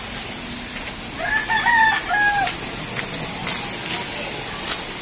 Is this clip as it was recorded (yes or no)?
yes